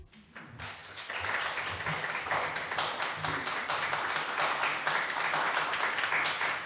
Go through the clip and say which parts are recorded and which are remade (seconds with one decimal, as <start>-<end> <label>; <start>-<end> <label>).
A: 0.0-6.7 recorded